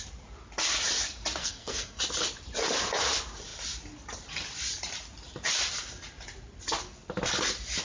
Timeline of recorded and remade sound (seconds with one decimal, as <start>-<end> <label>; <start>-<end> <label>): 0.0-1.4 recorded; 1.4-2.0 remade; 2.0-7.8 recorded